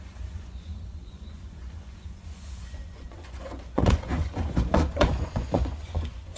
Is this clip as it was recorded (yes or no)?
no